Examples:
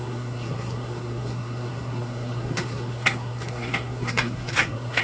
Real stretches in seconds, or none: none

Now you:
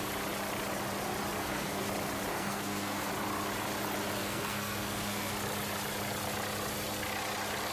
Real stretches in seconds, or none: 0.0-1.4; 1.9-2.3; 3.1-4.2; 5.3-7.7

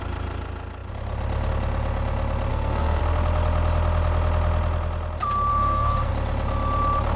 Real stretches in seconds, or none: 0.0-2.5; 3.0-5.5; 6.1-7.2

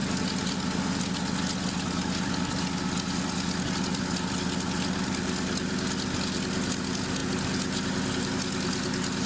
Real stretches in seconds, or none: 0.0-9.3

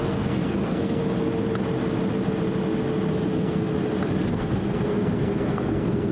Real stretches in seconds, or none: 1.0-3.1; 3.7-4.3